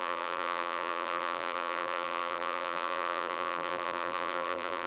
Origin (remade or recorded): remade